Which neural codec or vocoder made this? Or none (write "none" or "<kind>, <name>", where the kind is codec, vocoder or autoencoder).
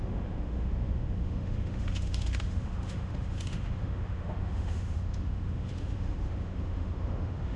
autoencoder, DAC-VAE